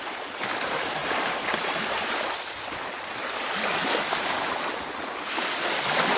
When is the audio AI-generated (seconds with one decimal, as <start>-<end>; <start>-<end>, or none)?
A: none